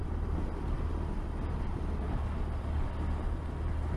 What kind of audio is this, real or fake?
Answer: real